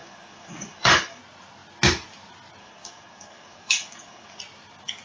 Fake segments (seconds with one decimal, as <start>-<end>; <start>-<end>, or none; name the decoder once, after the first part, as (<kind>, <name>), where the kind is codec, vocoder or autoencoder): 0.0-1.2 (codec, DAC); 2.6-4.4